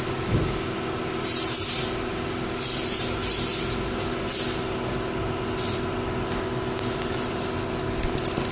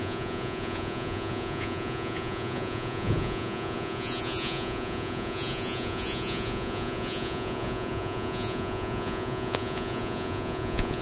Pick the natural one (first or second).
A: first